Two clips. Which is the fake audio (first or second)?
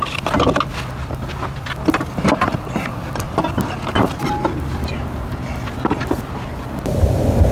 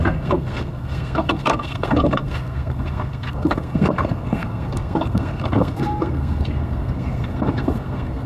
second